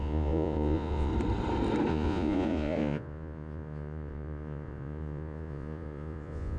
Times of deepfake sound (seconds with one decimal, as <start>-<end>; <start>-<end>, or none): 0.0-1.1; 1.9-6.6